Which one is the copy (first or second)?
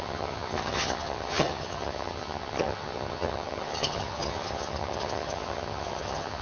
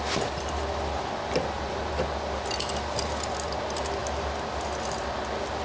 first